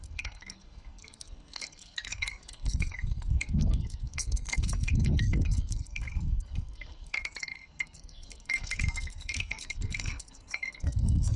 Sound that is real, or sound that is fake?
fake